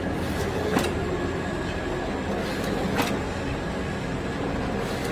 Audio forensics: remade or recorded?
recorded